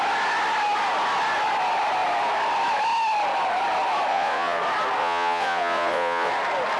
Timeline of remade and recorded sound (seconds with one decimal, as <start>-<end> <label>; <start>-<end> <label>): 0.0-4.1 recorded; 4.1-4.6 remade; 4.6-5.0 recorded; 5.0-6.3 remade; 6.3-6.8 recorded